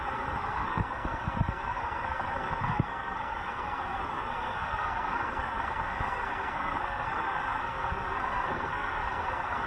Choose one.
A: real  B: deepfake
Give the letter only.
B